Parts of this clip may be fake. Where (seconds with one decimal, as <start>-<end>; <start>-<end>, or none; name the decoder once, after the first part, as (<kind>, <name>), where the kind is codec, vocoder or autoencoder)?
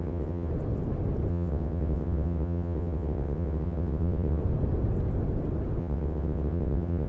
0.0-0.5 (vocoder, WaveNeXt); 1.3-4.4; 5.8-7.1